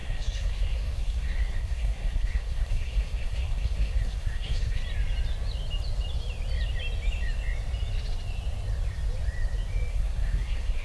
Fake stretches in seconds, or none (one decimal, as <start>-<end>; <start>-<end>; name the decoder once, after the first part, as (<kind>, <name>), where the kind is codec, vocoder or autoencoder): 0.0-4.8 (codec, SNAC); 9.9-10.8